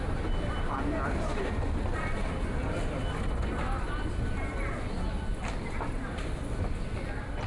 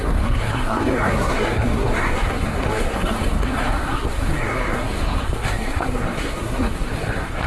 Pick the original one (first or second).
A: first